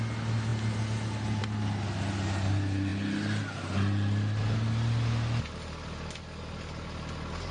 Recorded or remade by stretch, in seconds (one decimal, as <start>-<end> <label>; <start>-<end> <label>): 0.0-7.5 recorded